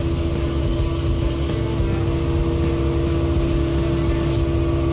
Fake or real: real